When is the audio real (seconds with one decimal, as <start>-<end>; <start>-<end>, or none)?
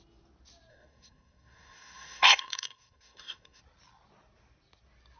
0.0-0.7; 3.6-5.2